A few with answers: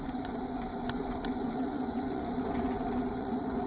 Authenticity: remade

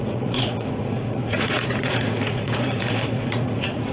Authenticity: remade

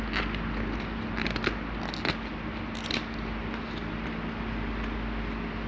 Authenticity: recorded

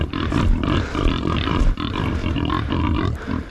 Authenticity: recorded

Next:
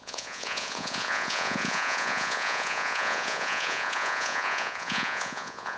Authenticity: remade